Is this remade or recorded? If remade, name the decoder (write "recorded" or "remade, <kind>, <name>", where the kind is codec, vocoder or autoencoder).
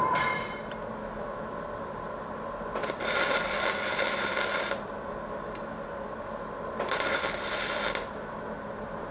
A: remade, vocoder, BigVGAN v2